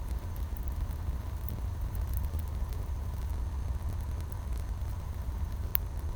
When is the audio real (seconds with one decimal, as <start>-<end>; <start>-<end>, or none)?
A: 3.3-4.8; 5.7-6.2